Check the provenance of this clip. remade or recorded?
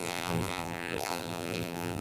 remade